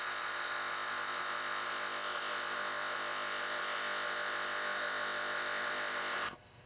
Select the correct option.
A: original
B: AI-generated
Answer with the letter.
B